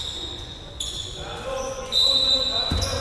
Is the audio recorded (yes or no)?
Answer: no